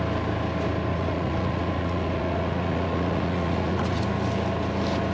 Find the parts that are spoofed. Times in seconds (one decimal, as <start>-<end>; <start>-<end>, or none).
0.9-4.0